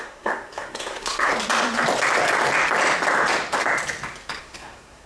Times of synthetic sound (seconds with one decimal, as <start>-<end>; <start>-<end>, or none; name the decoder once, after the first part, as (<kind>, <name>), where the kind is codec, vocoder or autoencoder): 0.0-1.3 (codec, SNAC); 4.4-5.1